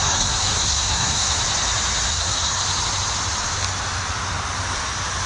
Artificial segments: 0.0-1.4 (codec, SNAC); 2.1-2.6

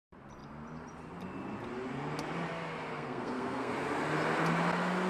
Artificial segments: 2.9-3.7 (codec, SNAC)

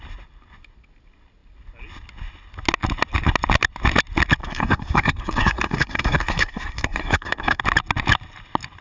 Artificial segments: 4.4-7.6 (codec, SNAC)

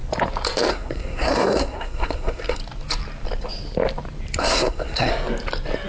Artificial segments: 0.7-2.6 (codec, SNAC); 4.4-5.1

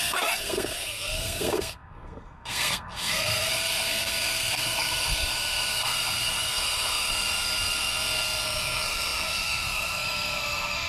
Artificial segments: 0.0-10.9 (codec, SNAC)

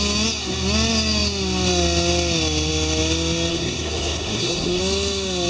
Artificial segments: 3.5-4.8 (codec, SNAC)